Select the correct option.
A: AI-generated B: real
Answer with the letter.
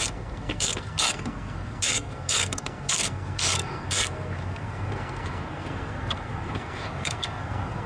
A